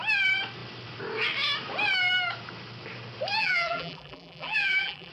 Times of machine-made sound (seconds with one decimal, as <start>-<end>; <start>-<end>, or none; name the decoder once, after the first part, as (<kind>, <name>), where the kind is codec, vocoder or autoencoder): 3.4-5.1 (vocoder, BigVGAN v2)